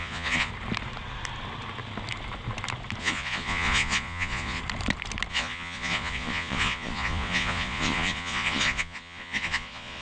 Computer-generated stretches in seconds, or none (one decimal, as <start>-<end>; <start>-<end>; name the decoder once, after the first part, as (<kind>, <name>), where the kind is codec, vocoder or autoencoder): 0.0-0.5 (vocoder, Vocos); 3.0-4.6; 5.3-10.0